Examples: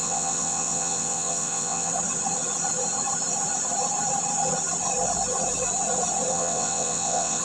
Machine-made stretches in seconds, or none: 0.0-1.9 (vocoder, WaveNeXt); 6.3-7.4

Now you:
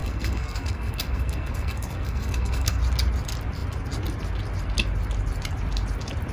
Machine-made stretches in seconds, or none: 0.0-2.8 (codec, SNAC)

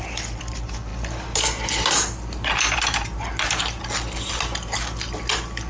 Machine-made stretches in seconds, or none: none